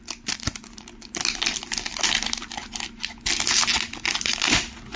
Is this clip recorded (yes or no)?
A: yes